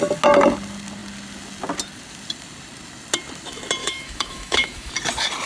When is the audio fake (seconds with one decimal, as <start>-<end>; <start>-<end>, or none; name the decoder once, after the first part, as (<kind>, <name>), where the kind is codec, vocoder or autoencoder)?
3.8-4.9 (autoencoder, DAC-VAE)

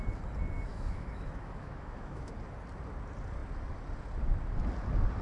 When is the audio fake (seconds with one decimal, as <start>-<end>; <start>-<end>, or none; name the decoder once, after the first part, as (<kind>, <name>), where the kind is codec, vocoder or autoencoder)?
0.7-2.3 (autoencoder, DAC-VAE)

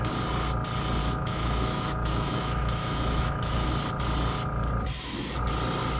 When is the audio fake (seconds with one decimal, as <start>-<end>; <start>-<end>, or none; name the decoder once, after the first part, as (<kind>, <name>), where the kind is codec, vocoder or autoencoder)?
1.0-3.7 (autoencoder, DAC-VAE)

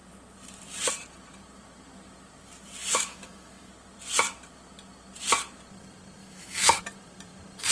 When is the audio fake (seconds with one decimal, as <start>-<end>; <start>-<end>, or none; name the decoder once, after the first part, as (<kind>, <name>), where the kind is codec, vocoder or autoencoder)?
2.8-3.7 (autoencoder, DAC-VAE); 6.2-6.8

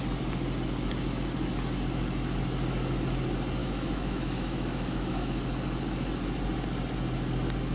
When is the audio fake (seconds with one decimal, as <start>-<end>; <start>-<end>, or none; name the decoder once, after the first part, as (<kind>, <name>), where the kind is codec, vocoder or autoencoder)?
3.6-5.3 (autoencoder, DAC-VAE)

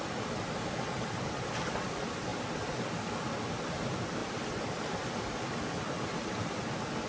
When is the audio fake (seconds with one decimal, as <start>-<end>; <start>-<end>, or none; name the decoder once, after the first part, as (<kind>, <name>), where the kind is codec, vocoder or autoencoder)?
none

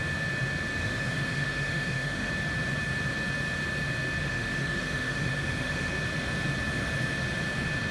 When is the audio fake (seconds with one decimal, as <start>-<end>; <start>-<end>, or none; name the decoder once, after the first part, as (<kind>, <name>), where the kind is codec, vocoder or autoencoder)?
0.8-2.3 (autoencoder, DAC-VAE); 4.2-5.9

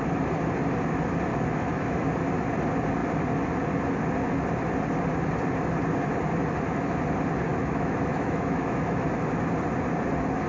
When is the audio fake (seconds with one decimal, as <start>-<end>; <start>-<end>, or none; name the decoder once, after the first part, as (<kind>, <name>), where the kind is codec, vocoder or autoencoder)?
1.3-2.0 (autoencoder, DAC-VAE); 7.5-9.2